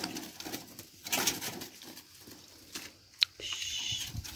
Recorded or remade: recorded